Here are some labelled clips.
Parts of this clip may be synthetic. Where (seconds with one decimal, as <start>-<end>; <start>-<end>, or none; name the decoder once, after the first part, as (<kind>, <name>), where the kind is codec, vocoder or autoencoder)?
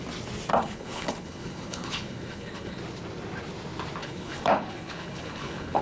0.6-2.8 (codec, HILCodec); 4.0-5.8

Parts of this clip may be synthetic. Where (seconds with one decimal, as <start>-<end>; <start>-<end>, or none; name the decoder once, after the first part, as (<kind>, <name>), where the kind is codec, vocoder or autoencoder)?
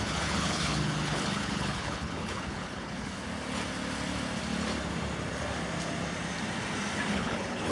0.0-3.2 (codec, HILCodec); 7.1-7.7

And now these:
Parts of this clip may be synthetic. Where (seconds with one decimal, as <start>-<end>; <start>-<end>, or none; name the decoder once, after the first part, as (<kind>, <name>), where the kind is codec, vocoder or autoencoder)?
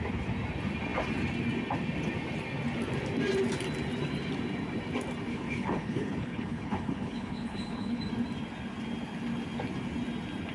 5.3-8.0 (codec, HILCodec)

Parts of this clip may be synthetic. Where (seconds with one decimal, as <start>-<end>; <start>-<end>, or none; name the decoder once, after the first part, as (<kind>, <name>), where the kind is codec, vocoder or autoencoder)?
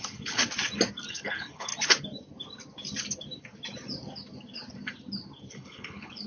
0.0-0.4 (codec, HILCodec); 1.1-1.7; 5.5-6.3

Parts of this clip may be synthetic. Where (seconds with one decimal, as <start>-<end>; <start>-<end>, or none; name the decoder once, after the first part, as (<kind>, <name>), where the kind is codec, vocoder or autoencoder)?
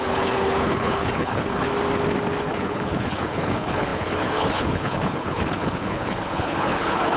0.0-1.7 (codec, HILCodec); 2.4-7.2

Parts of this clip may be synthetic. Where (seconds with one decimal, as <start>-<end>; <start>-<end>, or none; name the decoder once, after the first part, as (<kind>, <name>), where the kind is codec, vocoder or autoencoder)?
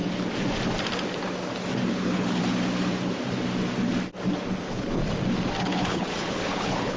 1.9-2.4 (codec, HILCodec); 4.5-5.0; 5.6-7.0